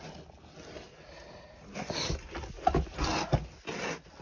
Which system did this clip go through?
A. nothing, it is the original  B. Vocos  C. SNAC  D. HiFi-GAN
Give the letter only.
A